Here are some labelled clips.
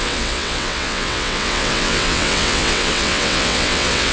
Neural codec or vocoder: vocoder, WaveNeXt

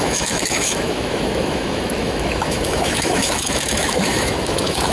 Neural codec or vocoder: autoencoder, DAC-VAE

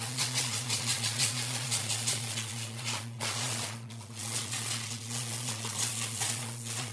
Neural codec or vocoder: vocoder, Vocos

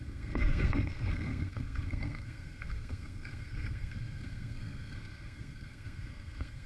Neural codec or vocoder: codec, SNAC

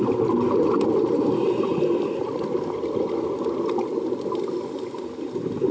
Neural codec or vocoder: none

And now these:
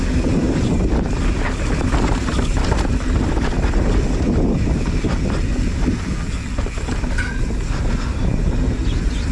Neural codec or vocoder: none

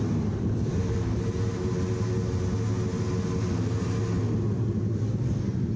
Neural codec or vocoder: none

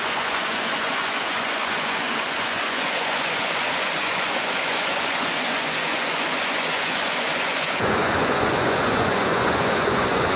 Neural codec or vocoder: vocoder, Vocos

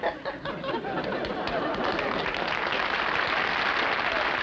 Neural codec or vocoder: none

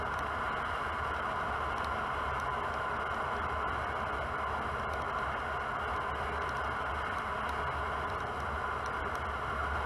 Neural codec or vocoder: none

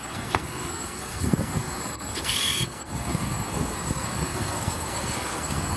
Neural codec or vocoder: codec, SNAC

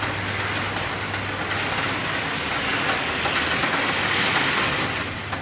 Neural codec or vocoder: none